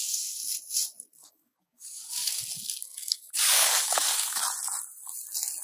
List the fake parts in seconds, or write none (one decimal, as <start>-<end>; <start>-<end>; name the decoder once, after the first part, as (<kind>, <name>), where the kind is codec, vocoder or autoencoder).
1.2-2.3 (codec, DAC); 3.0-4.4